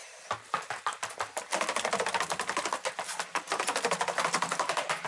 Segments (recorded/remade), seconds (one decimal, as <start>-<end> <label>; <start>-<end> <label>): 0.0-5.1 recorded